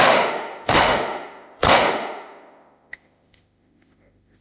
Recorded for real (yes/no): no